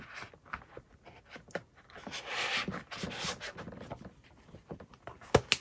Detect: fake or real real